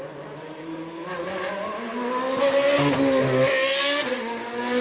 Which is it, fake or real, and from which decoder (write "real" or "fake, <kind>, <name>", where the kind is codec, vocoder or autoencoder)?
real